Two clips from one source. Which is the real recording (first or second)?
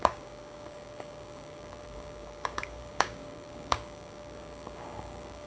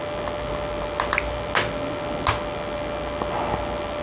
second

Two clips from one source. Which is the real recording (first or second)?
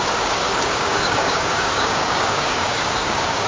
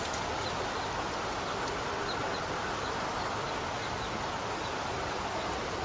second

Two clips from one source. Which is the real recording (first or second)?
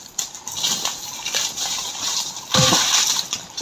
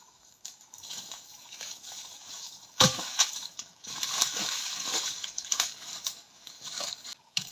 first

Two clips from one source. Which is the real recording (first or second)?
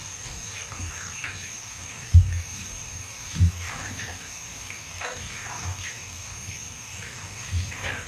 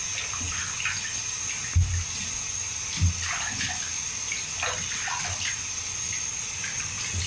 second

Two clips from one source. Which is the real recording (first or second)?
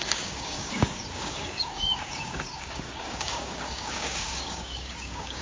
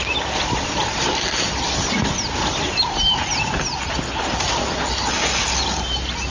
second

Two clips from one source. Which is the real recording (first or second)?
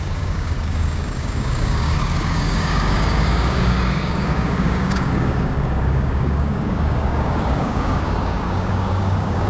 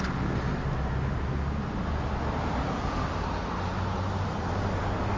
second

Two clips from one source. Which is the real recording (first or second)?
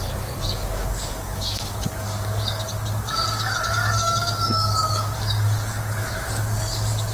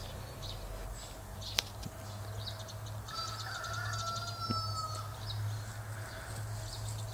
second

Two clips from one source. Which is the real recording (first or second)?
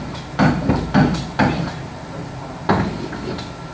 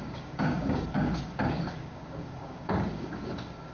first